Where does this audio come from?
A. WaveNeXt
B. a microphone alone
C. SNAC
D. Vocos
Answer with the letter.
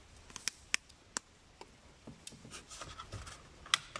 B